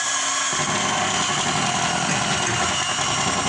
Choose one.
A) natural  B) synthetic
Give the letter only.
A